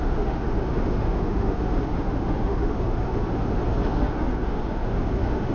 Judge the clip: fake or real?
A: fake